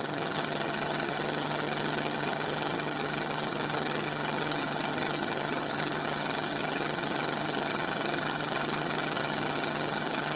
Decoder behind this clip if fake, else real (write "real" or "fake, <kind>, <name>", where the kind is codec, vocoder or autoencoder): fake, vocoder, HiFi-GAN